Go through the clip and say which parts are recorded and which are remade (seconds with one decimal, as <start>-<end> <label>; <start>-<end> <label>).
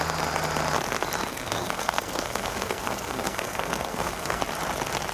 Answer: 0.0-1.3 recorded; 1.3-4.4 remade; 4.4-5.1 recorded